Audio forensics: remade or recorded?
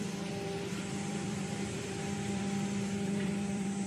remade